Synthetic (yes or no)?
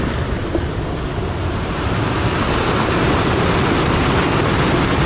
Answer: no